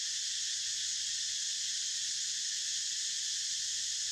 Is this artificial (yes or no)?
no